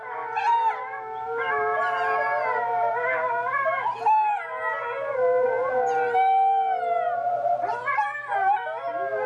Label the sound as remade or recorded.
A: recorded